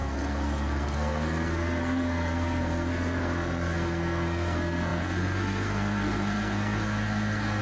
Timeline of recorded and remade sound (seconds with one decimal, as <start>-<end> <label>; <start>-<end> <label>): 0.0-7.6 remade